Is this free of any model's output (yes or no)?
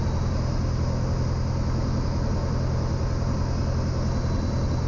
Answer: yes